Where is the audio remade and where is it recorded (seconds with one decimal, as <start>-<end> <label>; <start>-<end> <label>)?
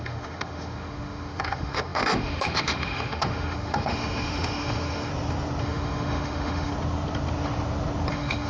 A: 0.0-5.1 remade; 5.1-5.6 recorded; 5.6-6.7 remade; 6.7-8.1 recorded; 8.1-8.5 remade